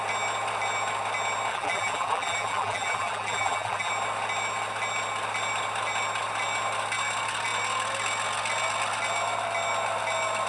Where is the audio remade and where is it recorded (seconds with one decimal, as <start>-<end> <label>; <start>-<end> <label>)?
0.0-1.5 recorded; 1.5-3.9 remade; 3.9-10.5 recorded